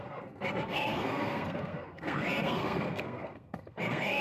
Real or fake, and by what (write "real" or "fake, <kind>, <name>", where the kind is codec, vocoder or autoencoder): fake, codec, SNAC